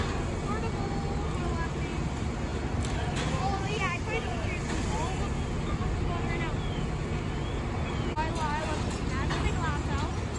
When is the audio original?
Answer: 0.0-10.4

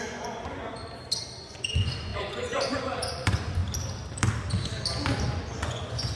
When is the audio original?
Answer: 0.8-1.4; 3.6-5.2

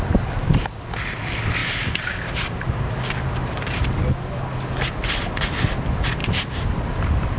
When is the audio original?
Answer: 0.0-1.6; 4.1-6.2

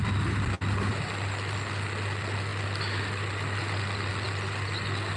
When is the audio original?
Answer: 0.0-5.2

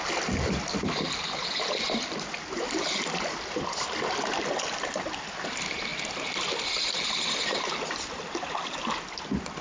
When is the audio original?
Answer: 0.0-9.6

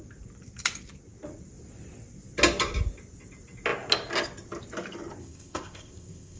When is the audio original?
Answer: 0.0-5.2

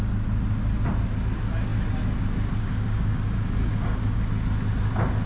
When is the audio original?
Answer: 0.0-2.6; 4.3-5.3